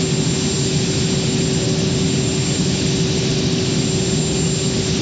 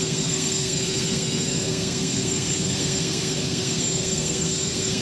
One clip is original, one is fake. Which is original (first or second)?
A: first